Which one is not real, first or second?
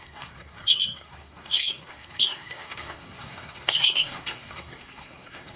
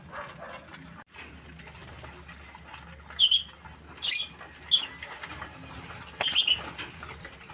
first